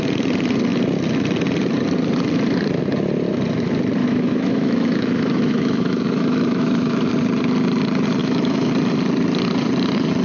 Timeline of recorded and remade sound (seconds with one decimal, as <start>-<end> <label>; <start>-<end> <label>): 0.0-4.0 recorded; 4.0-7.1 remade; 7.1-8.2 recorded; 8.2-8.7 remade; 8.7-10.2 recorded